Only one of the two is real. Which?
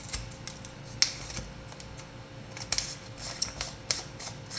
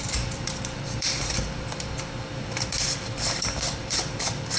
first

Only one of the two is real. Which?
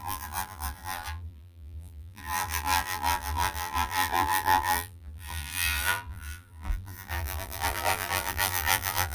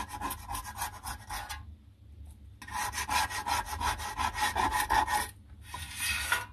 second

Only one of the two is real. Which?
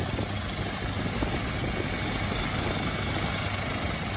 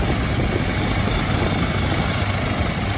first